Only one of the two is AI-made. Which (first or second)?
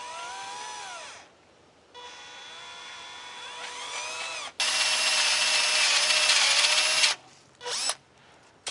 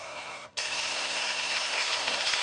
second